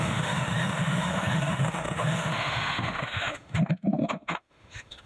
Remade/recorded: remade